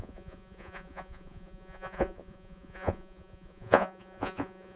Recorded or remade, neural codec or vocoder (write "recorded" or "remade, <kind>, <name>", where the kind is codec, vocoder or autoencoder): remade, vocoder, Vocos